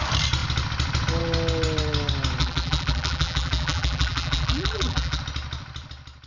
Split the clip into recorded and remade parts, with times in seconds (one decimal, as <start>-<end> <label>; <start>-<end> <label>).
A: 0.0-2.4 recorded; 2.4-5.2 remade; 5.2-6.3 recorded